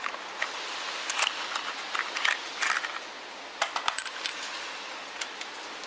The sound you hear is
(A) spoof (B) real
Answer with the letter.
B